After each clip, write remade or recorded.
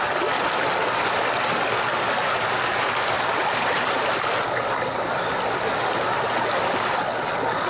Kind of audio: recorded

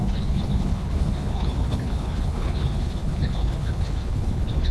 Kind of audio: remade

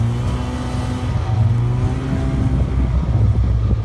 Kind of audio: recorded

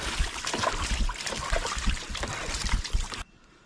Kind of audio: recorded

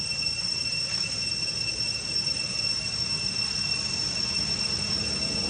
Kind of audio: recorded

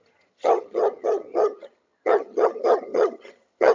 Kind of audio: remade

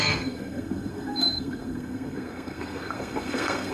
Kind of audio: remade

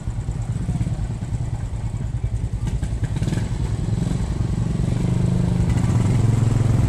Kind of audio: recorded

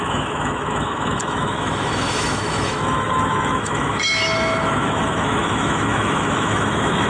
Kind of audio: remade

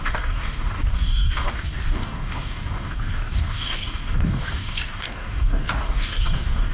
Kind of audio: remade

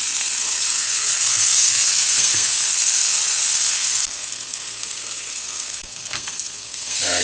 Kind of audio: remade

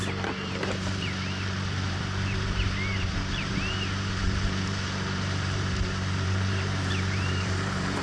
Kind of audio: remade